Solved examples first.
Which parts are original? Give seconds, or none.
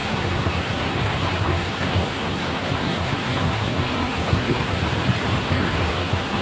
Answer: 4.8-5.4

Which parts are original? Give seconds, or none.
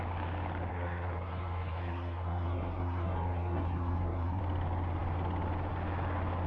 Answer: 0.0-0.7; 4.4-6.5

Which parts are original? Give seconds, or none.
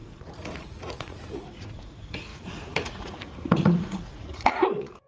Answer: none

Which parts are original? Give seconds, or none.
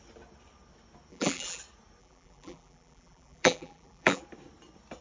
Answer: 0.0-1.1; 1.6-2.0; 4.2-5.0